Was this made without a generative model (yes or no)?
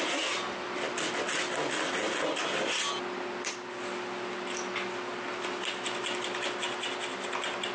yes